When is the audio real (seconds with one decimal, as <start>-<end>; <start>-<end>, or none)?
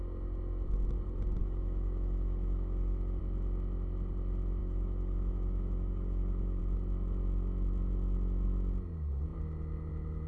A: 0.0-1.4; 3.2-4.6; 6.6-10.3